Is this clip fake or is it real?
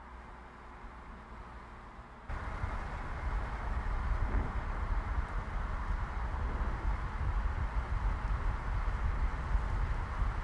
real